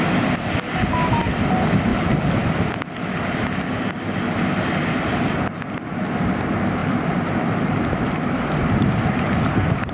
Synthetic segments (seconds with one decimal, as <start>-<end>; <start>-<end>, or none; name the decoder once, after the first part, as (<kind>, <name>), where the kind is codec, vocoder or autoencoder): 6.8-8.4 (vocoder, BigVGAN v2)